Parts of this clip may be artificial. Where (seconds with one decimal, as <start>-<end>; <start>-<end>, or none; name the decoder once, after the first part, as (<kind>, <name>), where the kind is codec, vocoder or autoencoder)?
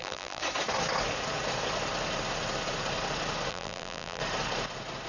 0.0-0.4 (vocoder, BigVGAN v2); 3.5-4.2